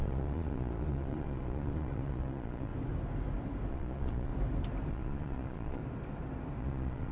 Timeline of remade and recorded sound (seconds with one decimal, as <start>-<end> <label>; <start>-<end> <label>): 0.0-2.7 remade; 2.7-3.7 recorded; 3.7-4.3 remade; 4.3-4.9 recorded; 4.9-5.8 remade; 5.8-6.6 recorded; 6.6-7.1 remade